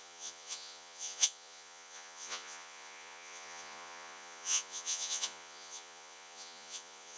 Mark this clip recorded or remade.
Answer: remade